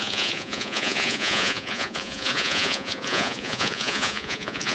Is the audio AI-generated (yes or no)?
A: yes